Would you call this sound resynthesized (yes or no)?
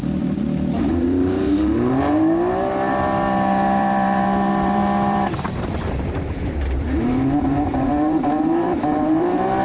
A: yes